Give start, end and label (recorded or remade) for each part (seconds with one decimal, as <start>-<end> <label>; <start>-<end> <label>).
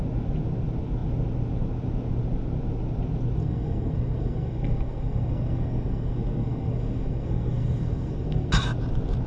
0.0-3.4 recorded; 3.4-8.5 remade; 8.5-9.3 recorded